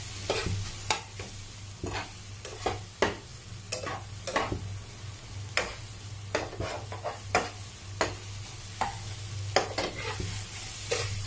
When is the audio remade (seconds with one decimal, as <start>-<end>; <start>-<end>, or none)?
none